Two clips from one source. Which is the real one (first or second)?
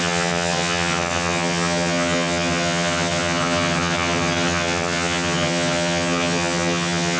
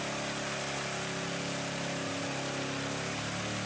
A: second